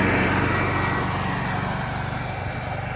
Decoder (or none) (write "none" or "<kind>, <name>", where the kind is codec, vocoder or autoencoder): none